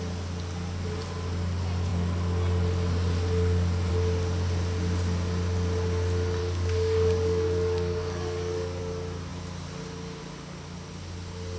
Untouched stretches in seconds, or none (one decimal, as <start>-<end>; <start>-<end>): 0.0-6.4; 8.8-11.6